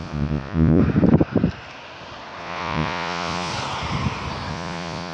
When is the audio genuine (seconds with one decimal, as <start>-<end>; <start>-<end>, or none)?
0.8-2.4; 3.5-4.5